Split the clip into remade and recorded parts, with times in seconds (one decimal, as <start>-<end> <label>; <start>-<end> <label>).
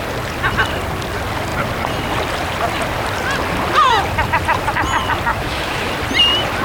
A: 0.0-5.3 recorded; 5.3-5.9 remade; 5.9-6.6 recorded